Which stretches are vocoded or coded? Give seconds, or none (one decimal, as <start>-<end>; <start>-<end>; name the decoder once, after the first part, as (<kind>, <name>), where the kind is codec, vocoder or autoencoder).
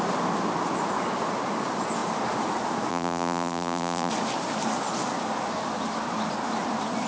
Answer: 2.9-4.1 (vocoder, BigVGAN v2)